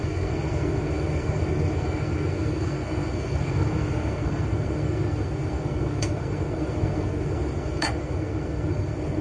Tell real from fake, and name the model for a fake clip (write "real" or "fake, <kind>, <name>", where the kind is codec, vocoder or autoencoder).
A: fake, codec, SNAC